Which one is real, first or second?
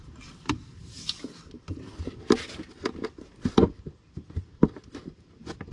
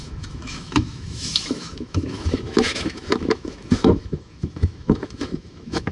first